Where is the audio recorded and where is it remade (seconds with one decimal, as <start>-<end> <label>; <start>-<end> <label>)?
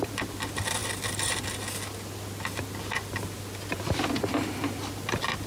0.0-5.5 recorded